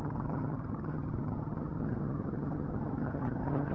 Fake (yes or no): yes